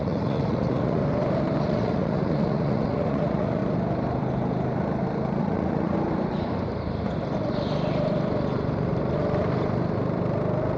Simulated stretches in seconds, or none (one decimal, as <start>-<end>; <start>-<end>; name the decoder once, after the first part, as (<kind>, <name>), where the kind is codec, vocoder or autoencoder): 0.0-1.0 (vocoder, Vocos); 1.6-3.6; 5.4-5.9